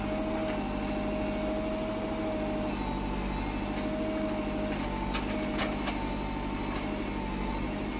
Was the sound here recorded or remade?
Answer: recorded